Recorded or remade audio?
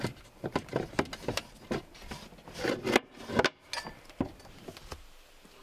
recorded